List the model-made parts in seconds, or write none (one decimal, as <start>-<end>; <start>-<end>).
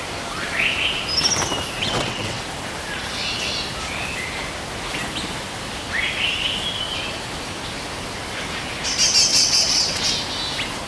1.8-2.4; 9.3-10.1